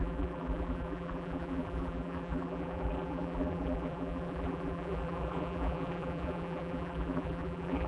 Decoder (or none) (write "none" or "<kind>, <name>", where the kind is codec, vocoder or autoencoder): vocoder, BigVGAN v2